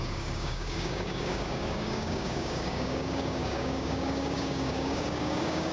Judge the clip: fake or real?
fake